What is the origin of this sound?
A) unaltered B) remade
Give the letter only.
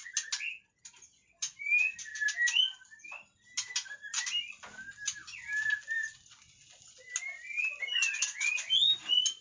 A